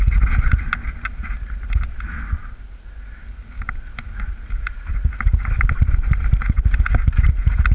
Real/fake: real